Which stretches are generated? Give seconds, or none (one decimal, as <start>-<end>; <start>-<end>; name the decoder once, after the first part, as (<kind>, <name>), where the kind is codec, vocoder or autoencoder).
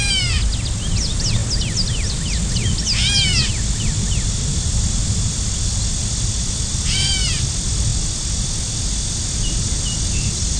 none